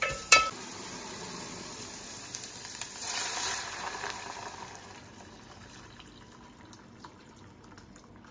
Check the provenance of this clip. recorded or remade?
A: remade